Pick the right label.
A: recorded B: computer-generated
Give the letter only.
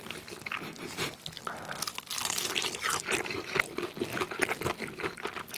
A